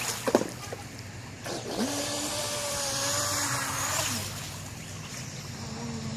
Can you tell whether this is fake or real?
fake